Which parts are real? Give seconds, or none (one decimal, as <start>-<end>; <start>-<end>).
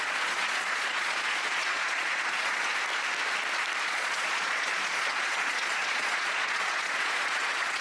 2.7-3.8